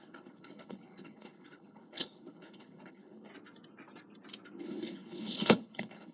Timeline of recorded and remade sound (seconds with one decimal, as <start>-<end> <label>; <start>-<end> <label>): 0.0-3.3 remade; 3.3-4.6 recorded; 4.6-6.1 remade